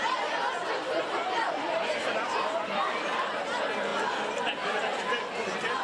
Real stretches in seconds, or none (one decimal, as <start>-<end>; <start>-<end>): 0.0-0.6; 3.3-3.9; 4.8-5.8